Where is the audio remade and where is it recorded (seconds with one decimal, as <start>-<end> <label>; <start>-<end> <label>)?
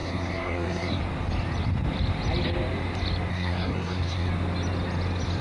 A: 0.0-1.0 remade; 1.0-3.3 recorded; 3.3-4.3 remade; 4.3-5.4 recorded